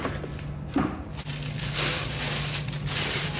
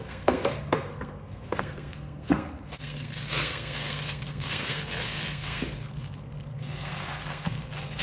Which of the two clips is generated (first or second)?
second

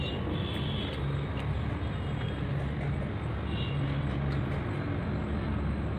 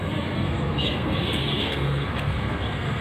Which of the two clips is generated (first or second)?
second